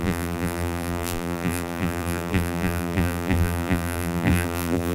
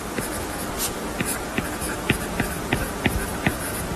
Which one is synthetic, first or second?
first